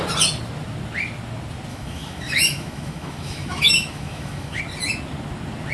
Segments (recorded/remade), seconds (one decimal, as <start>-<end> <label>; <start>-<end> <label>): 0.0-1.7 recorded; 1.7-4.6 remade; 4.6-5.7 recorded

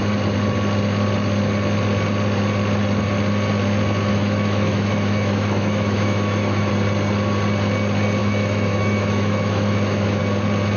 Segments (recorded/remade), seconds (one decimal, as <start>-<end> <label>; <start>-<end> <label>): 0.0-4.1 recorded; 4.1-6.7 remade; 6.7-8.2 recorded; 8.2-10.2 remade; 10.2-10.8 recorded

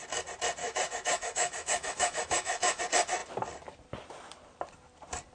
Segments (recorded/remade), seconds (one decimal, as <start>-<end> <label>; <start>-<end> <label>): 0.0-0.6 recorded; 0.6-2.8 remade; 2.8-5.3 recorded

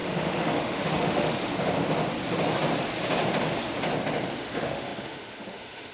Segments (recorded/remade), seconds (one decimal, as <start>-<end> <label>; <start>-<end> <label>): 0.0-1.4 remade; 1.4-4.4 recorded; 4.4-5.9 remade

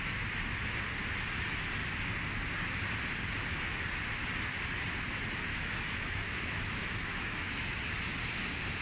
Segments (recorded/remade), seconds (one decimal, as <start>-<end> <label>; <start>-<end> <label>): 0.0-5.5 recorded; 5.5-7.8 remade; 7.8-8.8 recorded

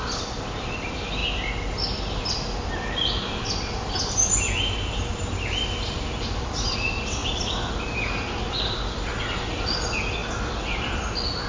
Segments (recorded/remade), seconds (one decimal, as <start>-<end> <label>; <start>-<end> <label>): 0.0-11.5 recorded

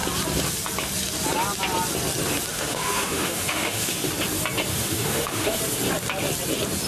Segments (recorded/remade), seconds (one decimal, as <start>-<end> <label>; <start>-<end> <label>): 0.0-2.5 recorded; 2.5-4.1 remade; 4.1-4.7 recorded; 4.7-5.6 remade; 5.6-6.9 recorded